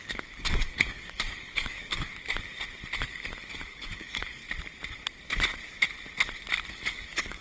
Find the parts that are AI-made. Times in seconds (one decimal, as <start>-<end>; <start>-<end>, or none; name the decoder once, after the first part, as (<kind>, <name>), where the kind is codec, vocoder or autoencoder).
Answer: 0.0-2.1 (codec, DAC); 3.1-4.4; 6.7-7.4

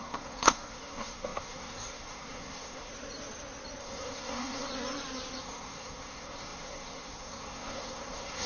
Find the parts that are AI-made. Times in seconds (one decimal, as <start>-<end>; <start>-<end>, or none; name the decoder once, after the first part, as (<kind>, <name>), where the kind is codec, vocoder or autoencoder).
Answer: 0.0-2.9 (codec, SNAC); 3.8-4.7; 5.4-8.5

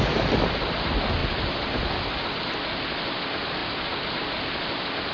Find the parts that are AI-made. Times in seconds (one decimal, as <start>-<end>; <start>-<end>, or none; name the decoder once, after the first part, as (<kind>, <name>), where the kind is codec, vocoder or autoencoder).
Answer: 1.2-1.9 (vocoder, BigVGAN v2); 3.6-4.4

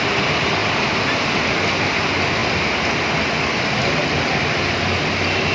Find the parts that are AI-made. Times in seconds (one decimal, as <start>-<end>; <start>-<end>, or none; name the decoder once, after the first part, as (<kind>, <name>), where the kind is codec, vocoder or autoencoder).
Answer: none

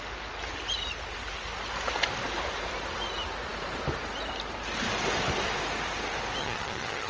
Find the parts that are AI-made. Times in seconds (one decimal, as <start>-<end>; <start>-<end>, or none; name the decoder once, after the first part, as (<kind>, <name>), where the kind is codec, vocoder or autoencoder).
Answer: 6.4-7.1 (vocoder, HiFi-GAN)

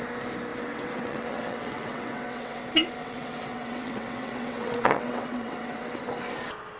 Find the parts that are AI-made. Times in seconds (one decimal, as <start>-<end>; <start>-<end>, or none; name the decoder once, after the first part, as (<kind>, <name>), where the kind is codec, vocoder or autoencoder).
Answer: 0.5-2.6 (vocoder, WaveNeXt); 3.0-6.0

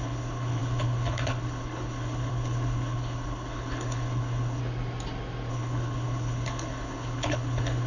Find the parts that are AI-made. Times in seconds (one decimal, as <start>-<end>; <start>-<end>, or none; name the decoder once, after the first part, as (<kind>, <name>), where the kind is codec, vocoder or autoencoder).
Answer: 0.0-4.6 (codec, HILCodec); 5.5-7.9

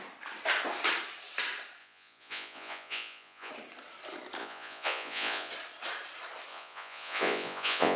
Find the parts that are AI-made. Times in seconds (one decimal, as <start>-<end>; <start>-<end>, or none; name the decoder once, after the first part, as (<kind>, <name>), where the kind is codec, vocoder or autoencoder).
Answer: 1.8-3.5 (vocoder, Vocos); 4.4-5.5; 6.5-8.0